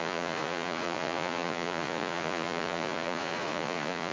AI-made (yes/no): yes